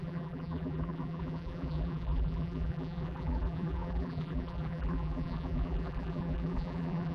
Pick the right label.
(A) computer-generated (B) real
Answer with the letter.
A